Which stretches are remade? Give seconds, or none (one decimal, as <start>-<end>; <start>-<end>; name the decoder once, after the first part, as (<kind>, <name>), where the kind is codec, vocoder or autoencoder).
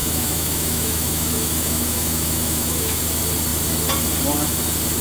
0.0-3.0 (autoencoder, DAC-VAE)